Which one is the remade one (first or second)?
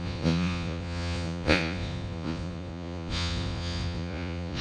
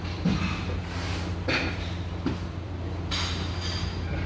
first